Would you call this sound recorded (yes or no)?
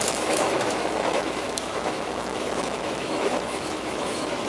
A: no